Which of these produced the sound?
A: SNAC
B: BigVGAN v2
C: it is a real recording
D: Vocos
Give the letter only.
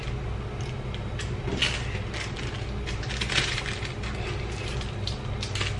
C